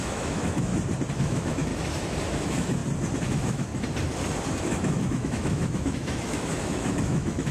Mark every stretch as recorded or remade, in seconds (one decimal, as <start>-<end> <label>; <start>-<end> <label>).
0.0-0.7 remade; 0.7-1.2 recorded; 1.2-1.7 remade; 1.7-2.3 recorded; 2.3-2.8 remade; 2.8-3.3 recorded; 3.3-3.7 remade; 3.7-4.6 recorded; 4.6-7.5 remade